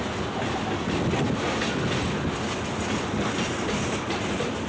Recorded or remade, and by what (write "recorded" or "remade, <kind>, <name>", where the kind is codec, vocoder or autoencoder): recorded